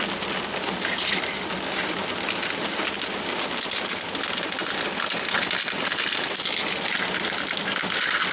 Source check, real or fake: real